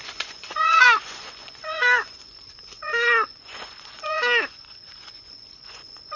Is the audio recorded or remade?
remade